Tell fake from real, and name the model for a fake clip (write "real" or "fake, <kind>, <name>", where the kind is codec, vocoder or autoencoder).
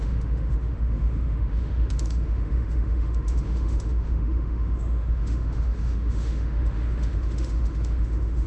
fake, autoencoder, DAC-VAE